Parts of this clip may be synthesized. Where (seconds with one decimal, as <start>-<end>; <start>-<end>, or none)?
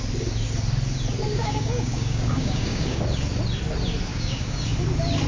1.3-3.0; 4.1-4.7